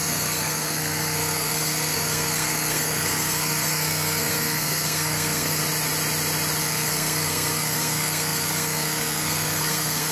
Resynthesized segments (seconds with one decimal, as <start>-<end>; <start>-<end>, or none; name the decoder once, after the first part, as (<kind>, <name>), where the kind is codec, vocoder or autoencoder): 0.0-5.6 (codec, SNAC); 6.6-10.1